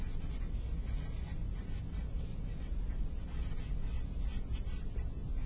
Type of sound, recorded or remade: recorded